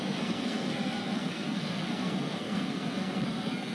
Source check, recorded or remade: remade